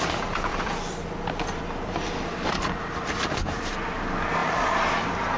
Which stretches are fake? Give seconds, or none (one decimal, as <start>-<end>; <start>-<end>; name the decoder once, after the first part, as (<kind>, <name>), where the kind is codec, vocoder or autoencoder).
0.5-3.7 (vocoder, BigVGAN v2); 4.4-5.4